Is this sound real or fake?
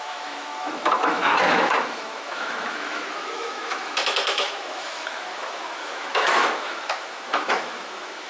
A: fake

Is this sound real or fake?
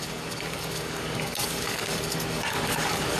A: fake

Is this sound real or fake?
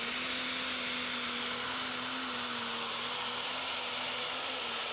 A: real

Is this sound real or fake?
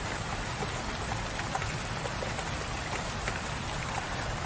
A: fake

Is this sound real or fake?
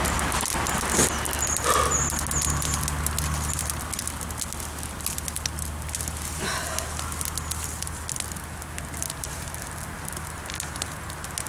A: real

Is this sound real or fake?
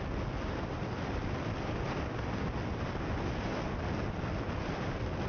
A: real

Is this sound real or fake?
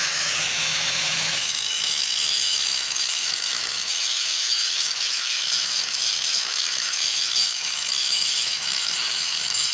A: fake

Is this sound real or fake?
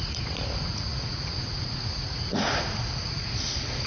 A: fake